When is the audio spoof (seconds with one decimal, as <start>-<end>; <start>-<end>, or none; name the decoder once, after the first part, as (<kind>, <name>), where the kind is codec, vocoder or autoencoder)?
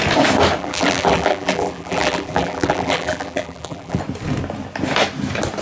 0.6-4.0 (vocoder, BigVGAN v2)